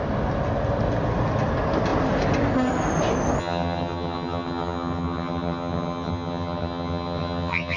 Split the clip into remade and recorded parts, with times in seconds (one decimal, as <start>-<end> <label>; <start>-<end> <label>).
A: 0.0-3.4 recorded; 3.4-7.8 remade